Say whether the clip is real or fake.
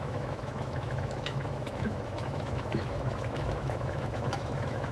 fake